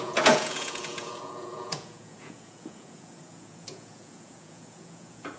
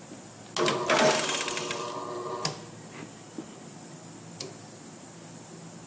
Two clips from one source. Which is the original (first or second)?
second